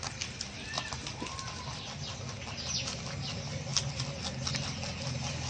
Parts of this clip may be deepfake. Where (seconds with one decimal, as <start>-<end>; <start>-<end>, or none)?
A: none